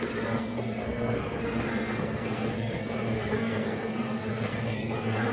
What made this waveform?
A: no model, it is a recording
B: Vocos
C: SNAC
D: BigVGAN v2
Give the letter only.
C